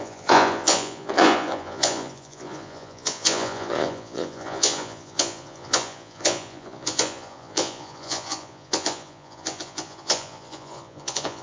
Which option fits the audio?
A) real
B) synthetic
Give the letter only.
B